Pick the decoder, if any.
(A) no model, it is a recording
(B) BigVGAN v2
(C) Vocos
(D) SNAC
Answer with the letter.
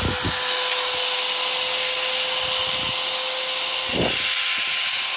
A